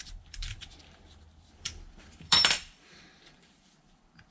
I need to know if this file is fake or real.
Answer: fake